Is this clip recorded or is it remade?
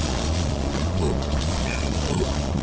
remade